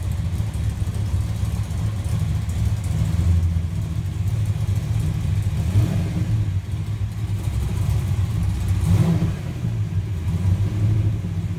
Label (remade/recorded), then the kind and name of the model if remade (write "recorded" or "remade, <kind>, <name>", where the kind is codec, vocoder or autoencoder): recorded